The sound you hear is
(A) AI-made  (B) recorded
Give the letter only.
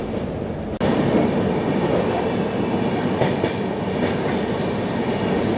B